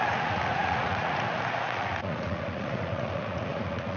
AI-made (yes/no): yes